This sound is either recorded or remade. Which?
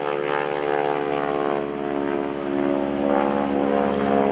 recorded